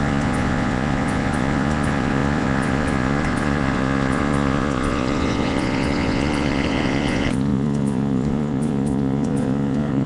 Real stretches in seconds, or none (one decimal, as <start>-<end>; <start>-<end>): none